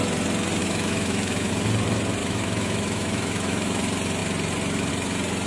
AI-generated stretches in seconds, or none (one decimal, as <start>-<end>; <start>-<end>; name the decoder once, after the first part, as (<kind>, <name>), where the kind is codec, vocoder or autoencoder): 0.6-1.5 (autoencoder, DAC-VAE); 2.2-3.8